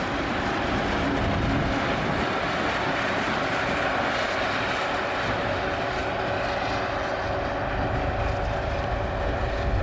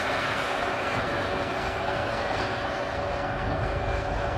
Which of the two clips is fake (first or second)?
second